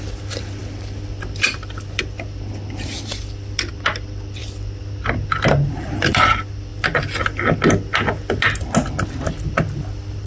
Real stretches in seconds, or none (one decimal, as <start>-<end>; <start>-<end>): 4.4-5.7; 6.7-9.2